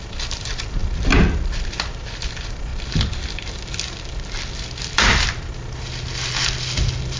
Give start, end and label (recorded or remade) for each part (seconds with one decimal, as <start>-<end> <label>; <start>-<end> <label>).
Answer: 0.0-7.2 recorded